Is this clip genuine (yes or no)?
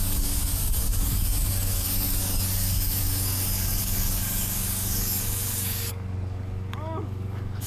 no